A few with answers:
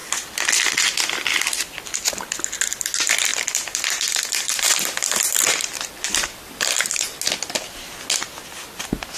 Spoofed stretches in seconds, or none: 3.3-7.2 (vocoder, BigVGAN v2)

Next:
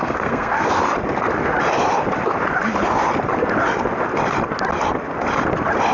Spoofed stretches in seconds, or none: 0.0-0.8 (codec, SNAC)

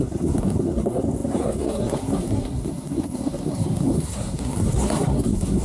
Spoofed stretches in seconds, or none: 0.0-5.6 (codec, SNAC)

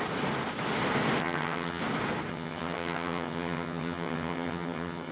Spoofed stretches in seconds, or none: 1.2-1.8 (vocoder, HiFi-GAN); 2.3-5.1

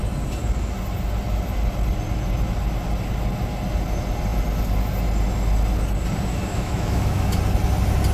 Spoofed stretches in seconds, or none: 6.5-7.4 (autoencoder, DAC-VAE)